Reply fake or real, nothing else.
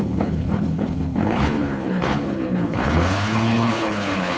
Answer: fake